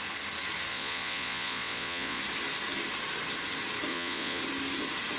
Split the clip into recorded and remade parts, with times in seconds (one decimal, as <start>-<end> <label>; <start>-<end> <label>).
0.0-0.7 recorded; 0.7-2.2 remade; 2.2-3.9 recorded; 3.9-4.4 remade; 4.4-5.2 recorded

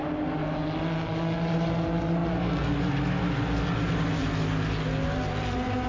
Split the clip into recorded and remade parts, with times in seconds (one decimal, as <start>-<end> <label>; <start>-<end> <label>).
0.0-5.9 recorded

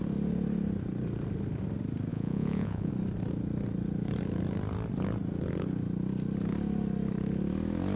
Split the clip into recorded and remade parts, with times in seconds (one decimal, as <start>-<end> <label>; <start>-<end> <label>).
0.0-2.1 recorded; 2.1-2.9 remade; 2.9-8.0 recorded

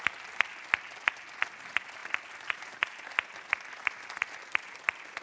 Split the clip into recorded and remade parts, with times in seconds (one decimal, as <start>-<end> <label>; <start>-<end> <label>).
0.0-5.2 recorded